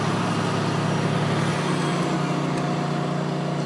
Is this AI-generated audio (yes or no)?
no